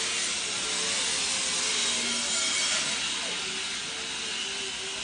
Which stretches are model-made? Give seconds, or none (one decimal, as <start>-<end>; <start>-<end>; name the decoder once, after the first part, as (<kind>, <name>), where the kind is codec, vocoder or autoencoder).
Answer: none